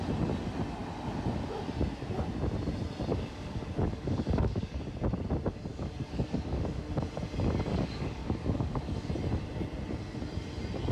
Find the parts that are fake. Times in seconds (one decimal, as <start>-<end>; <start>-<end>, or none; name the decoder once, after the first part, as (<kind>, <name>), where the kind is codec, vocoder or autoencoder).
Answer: 3.1-4.9 (codec, DAC); 5.7-6.8; 7.7-9.1